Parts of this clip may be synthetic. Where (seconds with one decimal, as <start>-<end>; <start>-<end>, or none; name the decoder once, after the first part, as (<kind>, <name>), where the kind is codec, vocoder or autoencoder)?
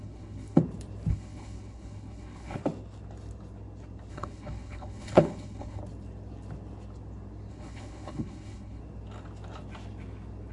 0.0-0.6 (codec, HILCodec); 1.1-2.6; 4.1-5.8; 7.5-8.8